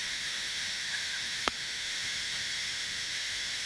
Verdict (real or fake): fake